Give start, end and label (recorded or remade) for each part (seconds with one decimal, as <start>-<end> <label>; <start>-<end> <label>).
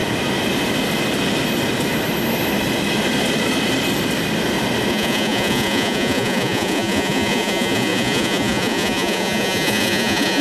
0.0-4.9 recorded; 4.9-10.4 remade